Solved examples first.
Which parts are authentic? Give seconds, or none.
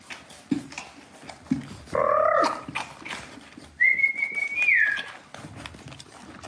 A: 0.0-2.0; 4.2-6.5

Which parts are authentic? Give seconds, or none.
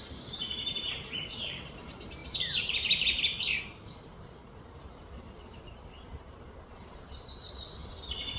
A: 7.6-8.4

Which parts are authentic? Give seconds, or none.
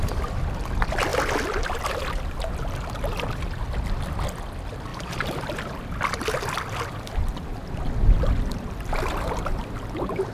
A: 0.0-1.1; 2.0-10.3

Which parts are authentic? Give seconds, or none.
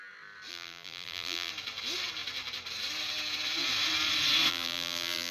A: 0.0-0.5; 1.5-4.5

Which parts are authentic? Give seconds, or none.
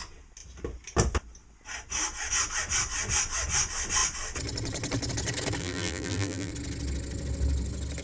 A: 0.0-5.6; 6.5-8.0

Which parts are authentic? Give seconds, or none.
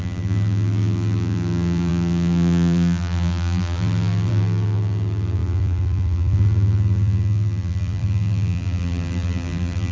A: none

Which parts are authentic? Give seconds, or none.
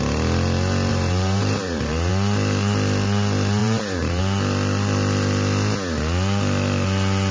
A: 0.0-0.9; 2.1-3.6; 4.2-7.3